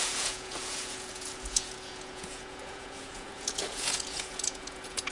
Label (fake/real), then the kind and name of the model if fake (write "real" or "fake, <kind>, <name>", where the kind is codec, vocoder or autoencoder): fake, vocoder, Vocos